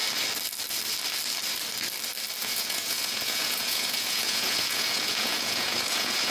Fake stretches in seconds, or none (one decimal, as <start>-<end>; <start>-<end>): 2.4-6.3